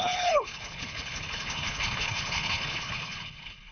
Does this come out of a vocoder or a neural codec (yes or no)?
yes